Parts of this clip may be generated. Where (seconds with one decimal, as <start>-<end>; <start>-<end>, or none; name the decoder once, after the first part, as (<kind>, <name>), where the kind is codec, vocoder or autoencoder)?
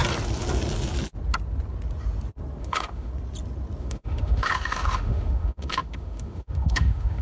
2.6-3.1 (autoencoder, DAC-VAE); 3.8-7.2